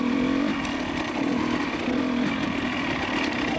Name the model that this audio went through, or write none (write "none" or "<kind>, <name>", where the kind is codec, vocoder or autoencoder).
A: none